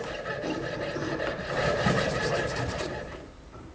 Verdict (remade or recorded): remade